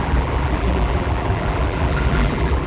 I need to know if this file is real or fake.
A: fake